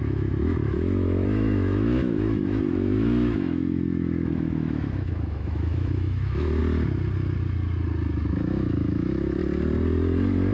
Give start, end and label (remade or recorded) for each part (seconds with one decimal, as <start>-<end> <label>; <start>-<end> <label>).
0.0-6.6 remade; 6.6-8.3 recorded; 8.3-9.4 remade; 9.4-10.5 recorded